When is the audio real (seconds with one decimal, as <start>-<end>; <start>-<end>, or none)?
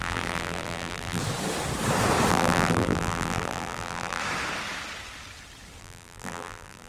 1.2-2.3; 4.2-5.8